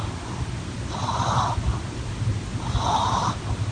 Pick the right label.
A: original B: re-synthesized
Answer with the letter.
A